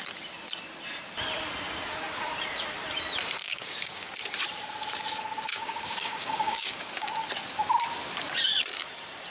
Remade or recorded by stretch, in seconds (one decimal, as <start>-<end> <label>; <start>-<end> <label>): 0.0-3.4 recorded; 3.4-4.1 remade; 4.1-5.5 recorded; 5.5-7.1 remade; 7.1-9.3 recorded